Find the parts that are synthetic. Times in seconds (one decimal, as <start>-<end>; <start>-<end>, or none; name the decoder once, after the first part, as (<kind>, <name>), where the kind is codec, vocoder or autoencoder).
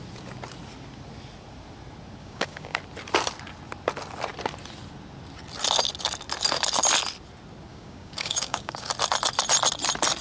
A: 2.2-2.8 (codec, DAC); 7.7-8.9